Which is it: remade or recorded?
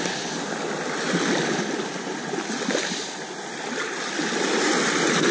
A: recorded